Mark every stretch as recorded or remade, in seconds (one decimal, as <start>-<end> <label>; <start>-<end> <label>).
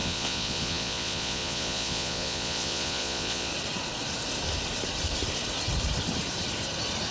0.0-3.5 remade; 3.5-7.1 recorded